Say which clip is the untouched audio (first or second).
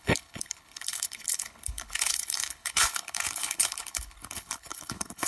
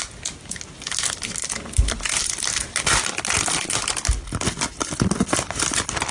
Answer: second